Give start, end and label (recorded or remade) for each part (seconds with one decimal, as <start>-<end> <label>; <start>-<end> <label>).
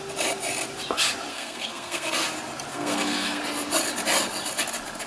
0.0-1.3 recorded; 1.3-2.1 remade; 2.1-2.7 recorded; 2.7-3.4 remade; 3.4-5.1 recorded